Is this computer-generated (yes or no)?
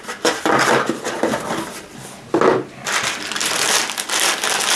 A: no